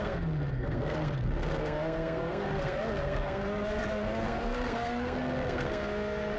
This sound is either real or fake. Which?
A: fake